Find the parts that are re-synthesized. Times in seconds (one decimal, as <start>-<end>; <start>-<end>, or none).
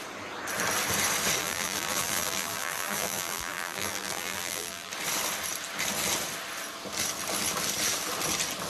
1.4-4.9